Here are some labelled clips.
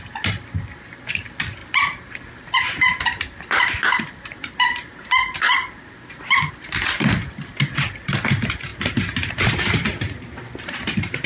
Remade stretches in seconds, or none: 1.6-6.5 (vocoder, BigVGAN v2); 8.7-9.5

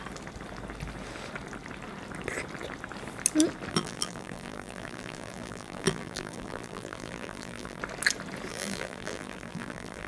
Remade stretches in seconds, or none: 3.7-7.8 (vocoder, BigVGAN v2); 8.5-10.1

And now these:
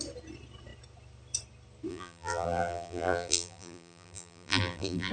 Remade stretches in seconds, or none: 1.9-5.1 (vocoder, BigVGAN v2)

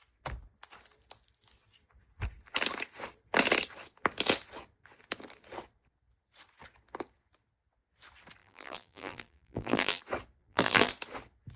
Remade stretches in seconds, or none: 8.4-10.0 (vocoder, BigVGAN v2); 10.4-10.9